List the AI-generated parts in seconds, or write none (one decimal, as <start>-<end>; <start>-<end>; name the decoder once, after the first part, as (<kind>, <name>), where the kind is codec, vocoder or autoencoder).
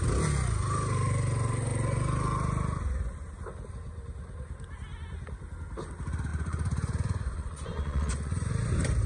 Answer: 6.3-8.5 (vocoder, Vocos)